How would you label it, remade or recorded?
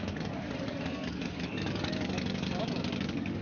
remade